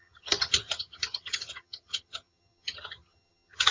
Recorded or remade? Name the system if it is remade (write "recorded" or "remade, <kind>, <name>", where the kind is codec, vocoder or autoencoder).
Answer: remade, vocoder, HiFi-GAN